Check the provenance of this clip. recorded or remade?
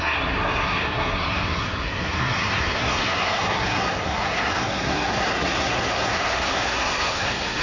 remade